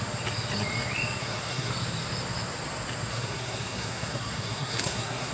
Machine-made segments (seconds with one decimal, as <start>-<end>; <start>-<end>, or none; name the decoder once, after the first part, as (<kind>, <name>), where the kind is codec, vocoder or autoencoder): 1.2-1.7 (codec, SNAC); 3.1-5.3

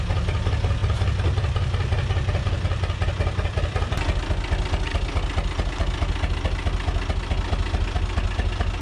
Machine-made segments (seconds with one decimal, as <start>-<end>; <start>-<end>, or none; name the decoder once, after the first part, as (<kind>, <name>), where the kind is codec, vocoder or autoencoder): none

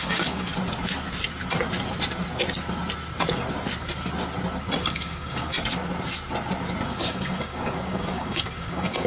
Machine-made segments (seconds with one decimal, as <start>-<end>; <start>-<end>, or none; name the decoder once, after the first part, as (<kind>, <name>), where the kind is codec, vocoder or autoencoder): 0.0-0.5 (codec, DAC); 4.8-5.5; 7.0-9.1